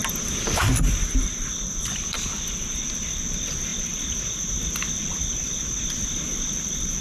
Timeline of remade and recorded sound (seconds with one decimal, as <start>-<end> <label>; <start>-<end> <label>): 0.0-1.0 remade; 1.0-7.0 recorded

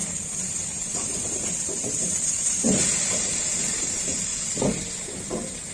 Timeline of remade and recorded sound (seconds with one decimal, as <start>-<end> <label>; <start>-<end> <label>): 0.0-4.3 remade; 4.3-5.2 recorded; 5.2-5.7 remade

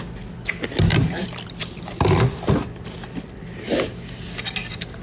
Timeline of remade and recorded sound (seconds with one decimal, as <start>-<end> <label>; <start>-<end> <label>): 0.0-0.9 recorded; 0.9-3.6 remade; 3.6-5.0 recorded

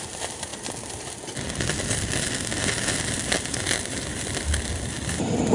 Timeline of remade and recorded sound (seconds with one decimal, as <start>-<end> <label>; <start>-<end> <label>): 0.0-0.5 remade; 0.5-3.8 recorded; 3.8-5.5 remade

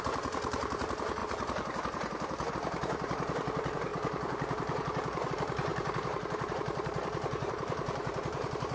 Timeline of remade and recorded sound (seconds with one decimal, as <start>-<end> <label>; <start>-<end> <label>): 0.0-8.7 remade

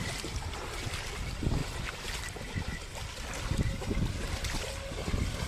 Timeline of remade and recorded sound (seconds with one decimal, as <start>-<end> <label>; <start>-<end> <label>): 0.0-5.5 recorded